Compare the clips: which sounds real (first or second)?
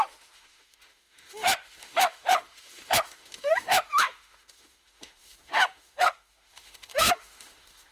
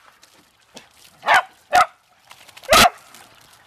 second